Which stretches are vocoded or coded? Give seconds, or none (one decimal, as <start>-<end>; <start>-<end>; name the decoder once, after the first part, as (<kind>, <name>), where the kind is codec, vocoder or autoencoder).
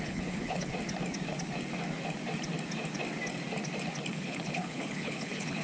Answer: 0.0-0.7 (codec, HILCodec); 4.1-5.6